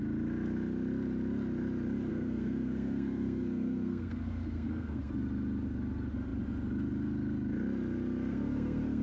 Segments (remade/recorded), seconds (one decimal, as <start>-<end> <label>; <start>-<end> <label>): 0.0-2.1 recorded; 2.1-5.1 remade; 5.1-8.3 recorded; 8.3-9.0 remade